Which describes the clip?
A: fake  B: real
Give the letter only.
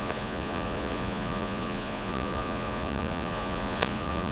A